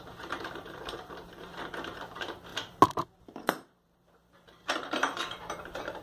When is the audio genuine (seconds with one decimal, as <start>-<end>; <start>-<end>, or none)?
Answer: 1.5-2.0; 2.5-3.2